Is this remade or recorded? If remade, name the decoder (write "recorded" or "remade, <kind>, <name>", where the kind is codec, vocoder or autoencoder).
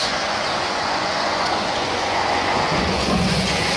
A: remade, vocoder, Vocos